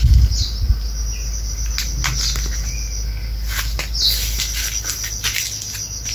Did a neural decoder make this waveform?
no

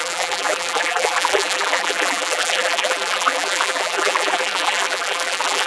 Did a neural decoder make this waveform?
yes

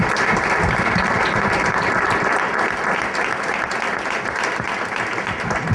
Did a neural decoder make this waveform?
yes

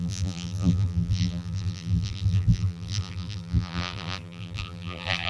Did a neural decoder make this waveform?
yes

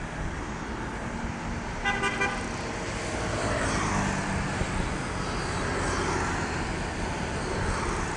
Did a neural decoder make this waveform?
no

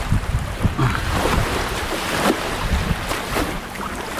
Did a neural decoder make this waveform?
yes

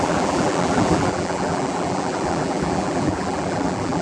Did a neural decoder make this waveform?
yes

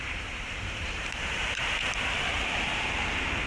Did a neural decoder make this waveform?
yes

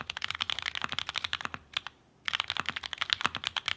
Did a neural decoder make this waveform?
no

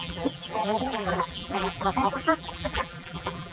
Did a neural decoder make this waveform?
yes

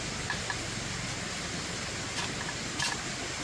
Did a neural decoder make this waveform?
no